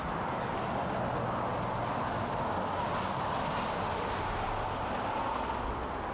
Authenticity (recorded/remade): recorded